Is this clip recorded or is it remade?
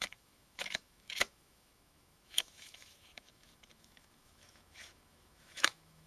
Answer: remade